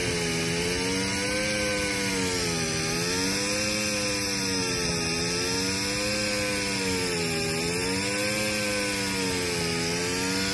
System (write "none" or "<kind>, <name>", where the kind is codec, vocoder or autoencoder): none